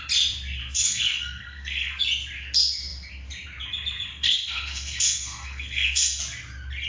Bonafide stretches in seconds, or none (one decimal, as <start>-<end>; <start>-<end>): 0.0-0.6; 2.0-4.1; 6.2-6.9